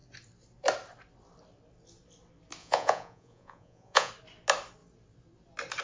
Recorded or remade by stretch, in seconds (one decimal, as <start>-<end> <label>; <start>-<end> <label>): 0.0-2.6 recorded; 2.6-4.1 remade; 4.1-5.8 recorded